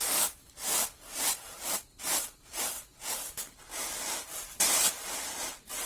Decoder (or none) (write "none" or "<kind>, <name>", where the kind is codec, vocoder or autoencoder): vocoder, BigVGAN v2